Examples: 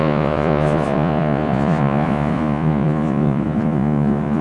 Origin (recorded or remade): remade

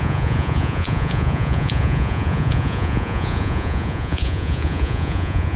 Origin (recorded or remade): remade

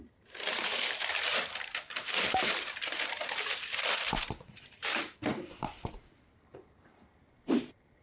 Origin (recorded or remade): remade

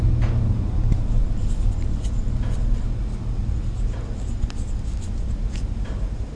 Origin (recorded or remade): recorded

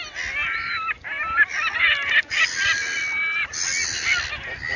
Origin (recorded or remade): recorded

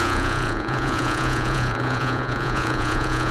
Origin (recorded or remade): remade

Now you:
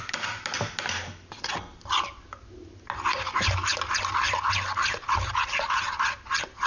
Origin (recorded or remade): recorded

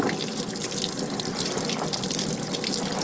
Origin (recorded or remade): recorded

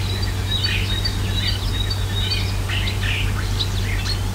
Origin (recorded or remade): recorded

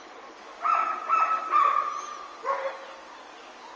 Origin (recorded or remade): recorded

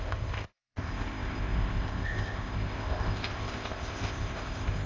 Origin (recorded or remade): remade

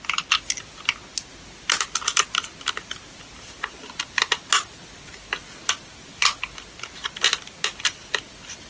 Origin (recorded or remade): recorded